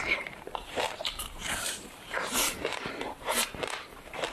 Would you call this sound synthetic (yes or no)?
yes